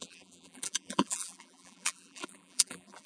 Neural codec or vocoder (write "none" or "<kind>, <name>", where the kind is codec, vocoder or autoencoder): vocoder, BigVGAN v2